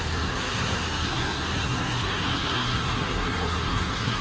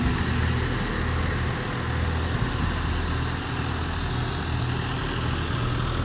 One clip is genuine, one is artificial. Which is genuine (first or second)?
second